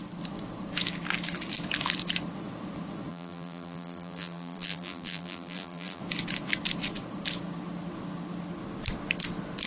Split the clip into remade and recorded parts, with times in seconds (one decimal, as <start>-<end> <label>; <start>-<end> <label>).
0.0-3.1 recorded; 3.1-6.0 remade; 6.0-9.7 recorded